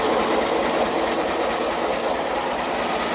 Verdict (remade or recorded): recorded